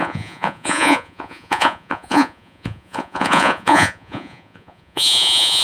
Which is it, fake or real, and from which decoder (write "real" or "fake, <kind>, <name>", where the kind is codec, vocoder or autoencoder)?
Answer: fake, vocoder, Vocos